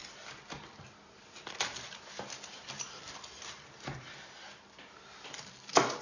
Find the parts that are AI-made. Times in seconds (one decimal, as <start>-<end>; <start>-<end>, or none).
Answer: none